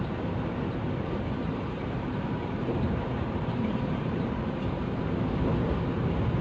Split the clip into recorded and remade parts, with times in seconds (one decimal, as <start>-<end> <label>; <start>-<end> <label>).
0.0-1.4 recorded; 1.4-5.0 remade; 5.0-6.4 recorded